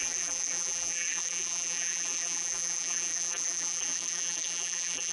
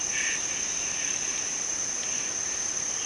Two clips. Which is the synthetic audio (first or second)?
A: first